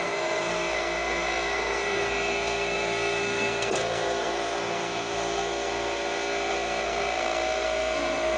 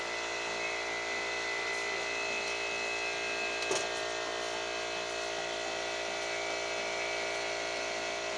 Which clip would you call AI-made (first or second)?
first